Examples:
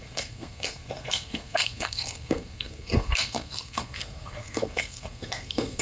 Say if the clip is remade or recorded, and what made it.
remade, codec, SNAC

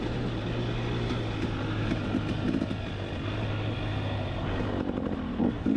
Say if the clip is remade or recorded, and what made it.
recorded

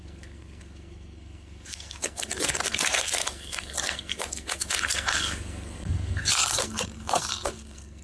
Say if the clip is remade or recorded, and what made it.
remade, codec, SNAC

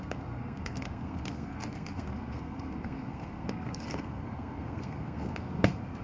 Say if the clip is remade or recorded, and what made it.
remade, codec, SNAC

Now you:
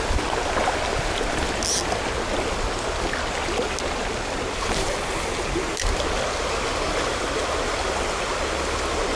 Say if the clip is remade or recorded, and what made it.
recorded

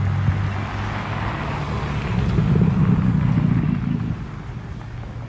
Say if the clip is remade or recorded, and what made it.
recorded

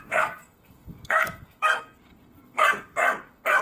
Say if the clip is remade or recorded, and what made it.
remade, codec, SNAC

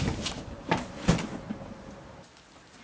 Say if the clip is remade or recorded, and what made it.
recorded